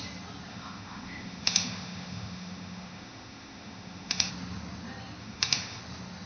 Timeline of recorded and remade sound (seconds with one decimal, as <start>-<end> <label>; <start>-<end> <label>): 0.0-0.5 recorded; 0.5-4.3 remade; 4.3-5.2 recorded; 5.2-5.8 remade; 5.8-6.3 recorded